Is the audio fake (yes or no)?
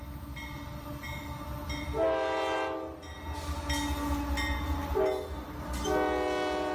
no